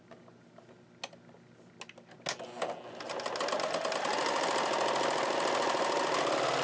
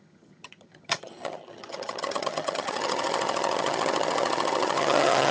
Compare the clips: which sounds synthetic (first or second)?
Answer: second